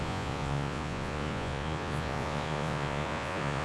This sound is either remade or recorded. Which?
remade